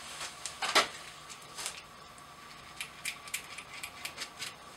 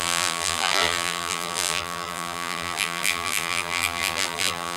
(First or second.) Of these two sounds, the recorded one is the first